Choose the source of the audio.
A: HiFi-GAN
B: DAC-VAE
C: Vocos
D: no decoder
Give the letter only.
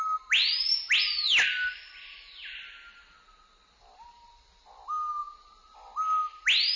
D